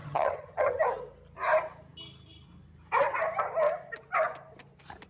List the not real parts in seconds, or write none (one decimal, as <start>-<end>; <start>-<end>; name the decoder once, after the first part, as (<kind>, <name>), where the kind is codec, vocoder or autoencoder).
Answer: 0.0-0.8 (vocoder, HiFi-GAN)